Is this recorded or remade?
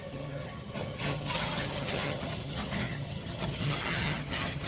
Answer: remade